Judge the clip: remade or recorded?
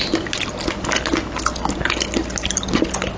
recorded